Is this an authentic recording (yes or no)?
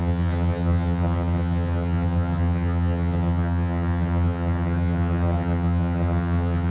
no